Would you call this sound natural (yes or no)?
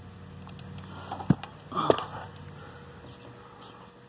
yes